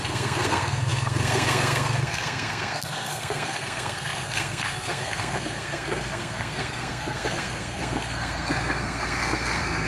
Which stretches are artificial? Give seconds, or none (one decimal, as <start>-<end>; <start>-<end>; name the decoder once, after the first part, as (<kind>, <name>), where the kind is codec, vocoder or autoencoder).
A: 0.0-9.9 (codec, SNAC)